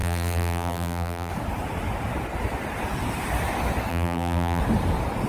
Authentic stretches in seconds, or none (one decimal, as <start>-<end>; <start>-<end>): 1.3-3.9; 4.6-5.3